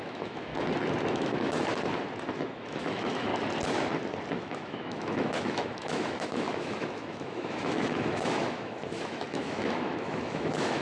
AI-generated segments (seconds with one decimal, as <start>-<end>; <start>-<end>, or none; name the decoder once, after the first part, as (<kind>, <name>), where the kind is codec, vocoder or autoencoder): 0.0-0.5 (autoencoder, DAC-VAE); 1.1-1.7; 2.3-3.3; 4.3-10.8